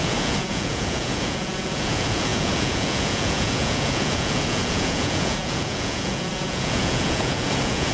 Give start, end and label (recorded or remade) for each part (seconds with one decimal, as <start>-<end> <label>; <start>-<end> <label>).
0.0-7.9 remade